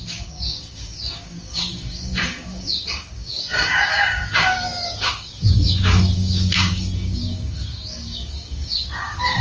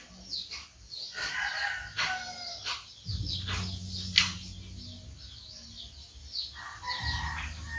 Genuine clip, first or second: second